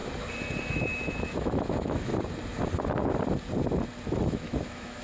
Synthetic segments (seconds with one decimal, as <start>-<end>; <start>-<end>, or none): 0.7-2.1; 4.3-5.0